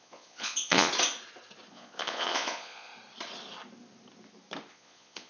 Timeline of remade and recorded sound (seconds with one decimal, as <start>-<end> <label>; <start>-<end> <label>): 0.0-0.9 remade; 0.9-1.7 recorded; 1.7-2.9 remade; 2.9-4.7 recorded; 4.7-5.3 remade